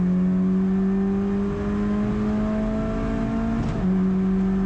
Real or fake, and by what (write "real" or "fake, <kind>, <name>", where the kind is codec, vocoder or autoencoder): real